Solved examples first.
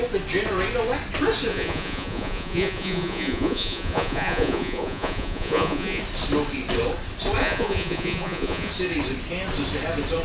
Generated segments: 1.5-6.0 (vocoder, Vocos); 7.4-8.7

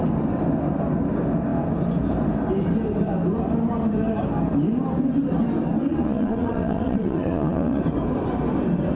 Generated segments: 5.9-7.8 (vocoder, Vocos)

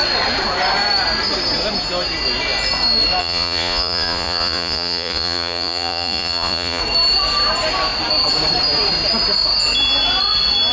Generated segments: 3.2-6.8 (vocoder, Vocos)

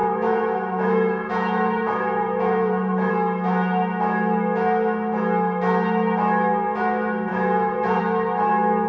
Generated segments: 0.0-3.1 (vocoder, Vocos); 7.3-8.0